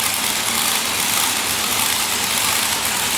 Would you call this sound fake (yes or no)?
no